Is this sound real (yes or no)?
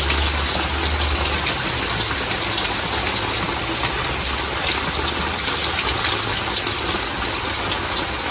yes